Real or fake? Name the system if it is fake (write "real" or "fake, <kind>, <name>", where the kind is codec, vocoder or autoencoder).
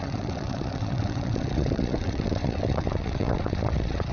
fake, vocoder, WaveNeXt